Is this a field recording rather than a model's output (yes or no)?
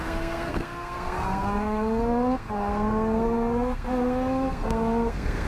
no